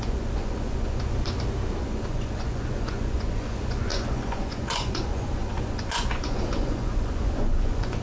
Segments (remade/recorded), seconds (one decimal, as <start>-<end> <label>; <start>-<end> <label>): 0.0-1.1 remade; 1.1-1.8 recorded; 1.8-8.0 remade